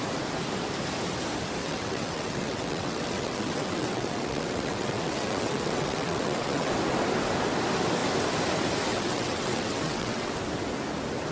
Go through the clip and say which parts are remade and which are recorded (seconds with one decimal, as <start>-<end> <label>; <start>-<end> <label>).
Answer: 0.0-1.6 recorded; 1.6-6.7 remade; 6.7-8.9 recorded; 8.9-10.3 remade; 10.3-11.3 recorded